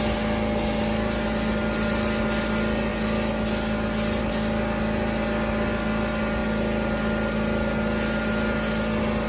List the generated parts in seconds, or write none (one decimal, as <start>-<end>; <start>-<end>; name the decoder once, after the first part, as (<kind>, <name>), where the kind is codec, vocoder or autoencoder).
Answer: none